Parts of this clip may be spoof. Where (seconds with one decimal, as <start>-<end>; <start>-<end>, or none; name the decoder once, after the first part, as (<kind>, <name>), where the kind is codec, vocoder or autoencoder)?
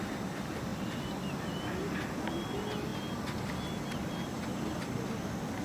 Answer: none